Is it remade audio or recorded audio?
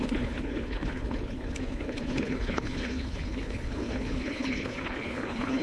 remade